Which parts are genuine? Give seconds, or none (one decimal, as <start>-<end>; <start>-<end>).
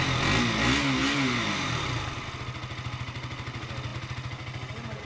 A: 0.0-1.0; 1.7-5.0